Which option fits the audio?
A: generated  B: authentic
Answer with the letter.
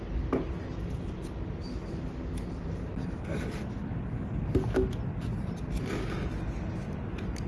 B